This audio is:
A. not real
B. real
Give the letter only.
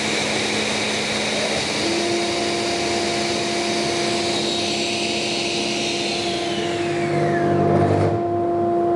B